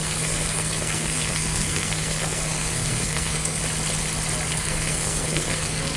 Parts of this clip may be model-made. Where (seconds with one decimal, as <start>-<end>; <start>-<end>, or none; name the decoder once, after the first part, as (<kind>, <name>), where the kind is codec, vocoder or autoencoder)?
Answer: 0.0-3.6 (codec, SNAC); 4.5-6.0